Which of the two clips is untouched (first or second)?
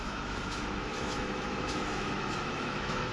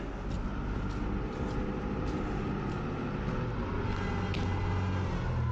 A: second